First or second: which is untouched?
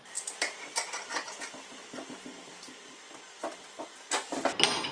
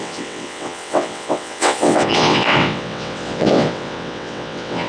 first